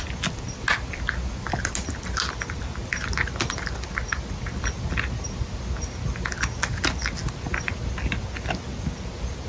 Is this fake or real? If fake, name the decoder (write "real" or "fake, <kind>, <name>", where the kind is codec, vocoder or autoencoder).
real